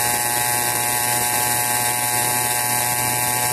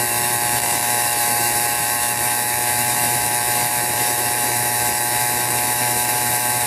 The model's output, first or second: second